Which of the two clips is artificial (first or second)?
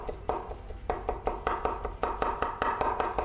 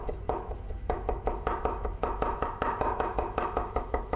second